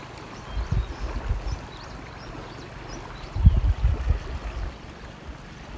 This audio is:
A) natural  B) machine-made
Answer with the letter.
A